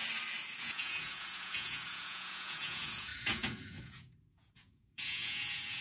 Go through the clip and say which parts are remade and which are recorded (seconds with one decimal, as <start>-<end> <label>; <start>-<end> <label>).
0.0-0.6 recorded; 0.6-5.8 remade

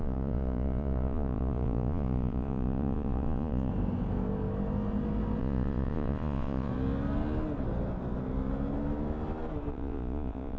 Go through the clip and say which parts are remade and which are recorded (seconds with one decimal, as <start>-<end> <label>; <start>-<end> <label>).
0.0-3.7 remade; 3.7-5.4 recorded; 5.4-6.7 remade; 6.7-9.7 recorded; 9.7-10.6 remade